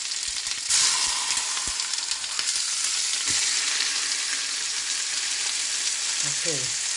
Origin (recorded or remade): recorded